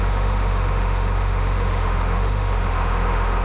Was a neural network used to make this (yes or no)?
yes